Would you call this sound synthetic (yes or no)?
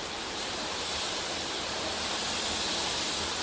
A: no